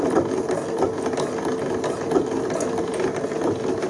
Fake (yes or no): no